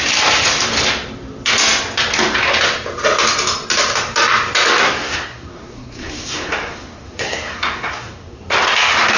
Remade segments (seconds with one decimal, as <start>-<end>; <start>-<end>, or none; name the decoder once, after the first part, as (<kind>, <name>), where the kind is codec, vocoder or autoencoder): 4.8-8.4 (codec, SNAC)